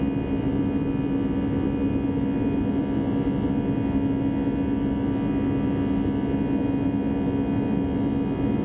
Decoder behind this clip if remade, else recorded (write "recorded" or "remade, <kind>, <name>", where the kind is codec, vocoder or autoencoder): recorded